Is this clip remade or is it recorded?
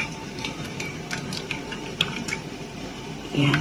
remade